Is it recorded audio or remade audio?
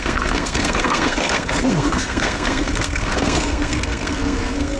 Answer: remade